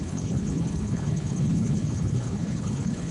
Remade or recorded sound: remade